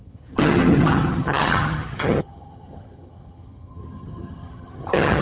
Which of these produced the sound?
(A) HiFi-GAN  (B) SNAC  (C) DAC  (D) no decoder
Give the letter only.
A